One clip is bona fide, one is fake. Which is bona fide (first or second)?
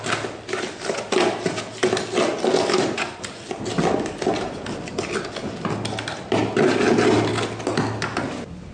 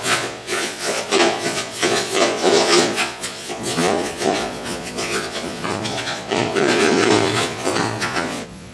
first